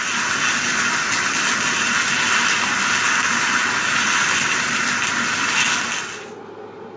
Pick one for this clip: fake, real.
real